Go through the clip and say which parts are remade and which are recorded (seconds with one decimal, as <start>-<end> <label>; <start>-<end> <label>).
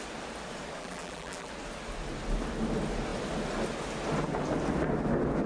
0.0-0.8 recorded; 0.8-1.5 remade; 1.5-5.5 recorded